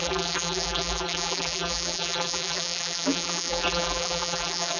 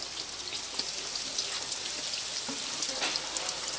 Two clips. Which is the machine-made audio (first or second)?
first